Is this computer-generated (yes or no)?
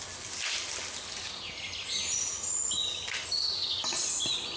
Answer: no